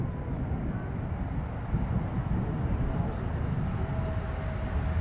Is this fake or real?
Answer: real